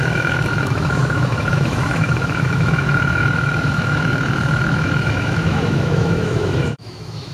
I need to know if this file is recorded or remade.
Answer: remade